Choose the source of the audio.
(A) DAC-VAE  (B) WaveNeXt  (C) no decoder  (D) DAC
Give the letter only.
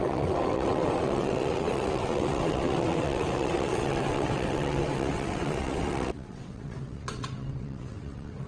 B